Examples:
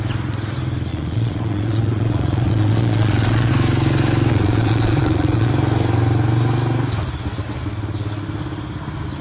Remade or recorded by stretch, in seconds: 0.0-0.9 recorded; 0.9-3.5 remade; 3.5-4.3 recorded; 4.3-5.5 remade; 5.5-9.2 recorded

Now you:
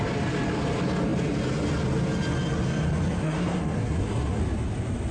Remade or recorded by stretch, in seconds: 0.0-3.2 recorded; 3.2-4.4 remade; 4.4-5.1 recorded